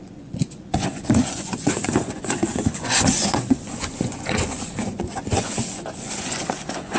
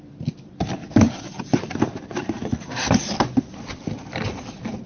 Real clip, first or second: second